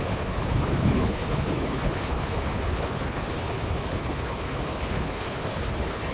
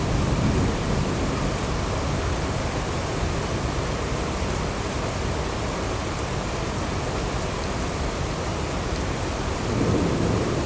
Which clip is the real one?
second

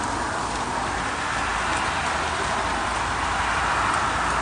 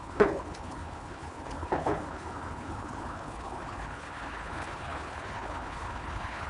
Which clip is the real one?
first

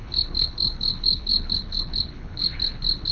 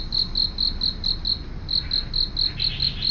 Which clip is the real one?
second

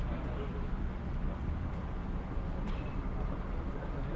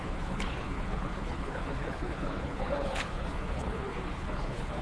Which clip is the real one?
first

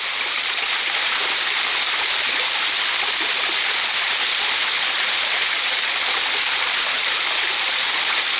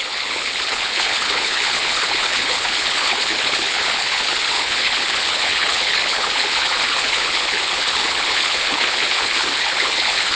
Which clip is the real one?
first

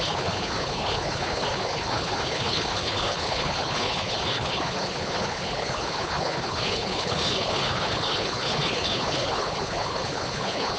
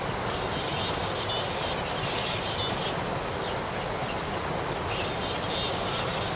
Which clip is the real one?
second